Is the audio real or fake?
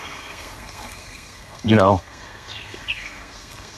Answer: fake